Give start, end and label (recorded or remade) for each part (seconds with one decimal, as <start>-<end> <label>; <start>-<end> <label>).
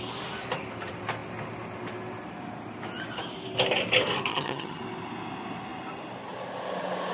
0.0-4.3 recorded; 4.3-4.8 remade; 4.8-7.1 recorded